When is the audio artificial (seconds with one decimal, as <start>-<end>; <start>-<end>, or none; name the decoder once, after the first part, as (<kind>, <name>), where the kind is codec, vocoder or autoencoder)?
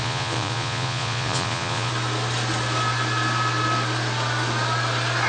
0.0-1.9 (vocoder, Vocos)